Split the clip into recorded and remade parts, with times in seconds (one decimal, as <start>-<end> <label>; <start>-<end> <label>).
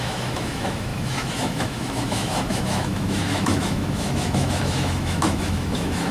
0.0-6.1 remade